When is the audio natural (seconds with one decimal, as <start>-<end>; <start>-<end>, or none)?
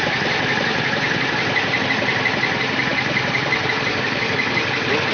0.0-5.1